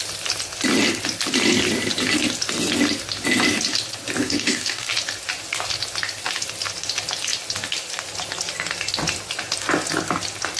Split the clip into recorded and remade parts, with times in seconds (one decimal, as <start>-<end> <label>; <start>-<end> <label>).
0.0-4.2 recorded; 4.2-4.9 remade; 4.9-10.6 recorded